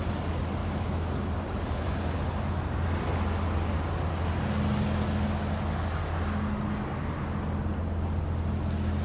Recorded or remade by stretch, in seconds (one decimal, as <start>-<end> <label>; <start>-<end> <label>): 0.0-0.6 recorded; 0.6-1.1 remade; 1.1-9.0 recorded

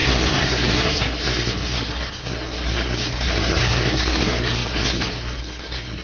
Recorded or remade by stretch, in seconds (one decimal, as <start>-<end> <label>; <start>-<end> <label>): 0.0-6.0 remade

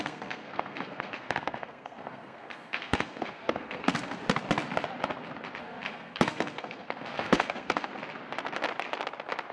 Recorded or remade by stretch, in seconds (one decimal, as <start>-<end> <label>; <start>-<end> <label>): 0.0-4.2 remade; 4.2-5.6 recorded; 5.6-7.9 remade; 7.9-9.5 recorded

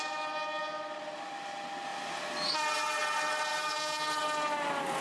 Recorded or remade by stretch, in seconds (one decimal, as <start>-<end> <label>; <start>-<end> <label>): 0.0-3.5 recorded; 3.5-4.2 remade; 4.2-5.0 recorded

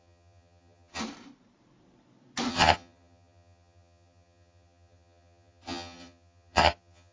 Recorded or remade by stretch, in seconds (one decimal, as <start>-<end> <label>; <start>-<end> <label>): 0.0-1.0 remade; 1.0-2.5 recorded; 2.5-7.1 remade

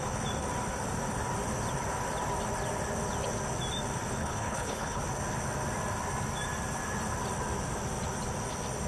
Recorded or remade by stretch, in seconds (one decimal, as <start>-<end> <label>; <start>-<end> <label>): 0.0-4.2 recorded; 4.2-5.0 remade; 5.0-8.9 recorded